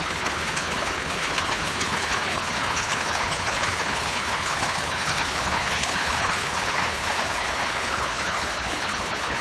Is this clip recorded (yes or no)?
no